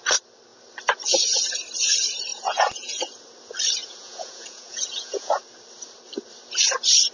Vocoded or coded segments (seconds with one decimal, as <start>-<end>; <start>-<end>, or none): 2.3-3.1; 3.8-5.4